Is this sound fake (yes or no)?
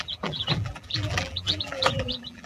yes